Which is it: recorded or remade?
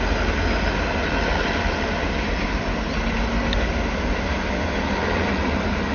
recorded